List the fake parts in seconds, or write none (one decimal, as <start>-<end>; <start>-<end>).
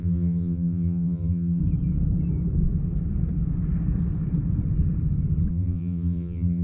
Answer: 0.0-1.6; 5.5-6.6